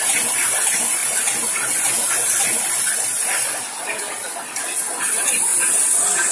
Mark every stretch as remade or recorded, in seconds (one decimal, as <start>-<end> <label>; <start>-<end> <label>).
0.0-3.1 recorded; 3.1-4.0 remade; 4.0-6.3 recorded